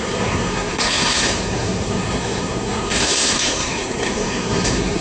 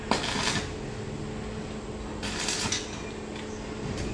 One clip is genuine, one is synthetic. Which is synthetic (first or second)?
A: first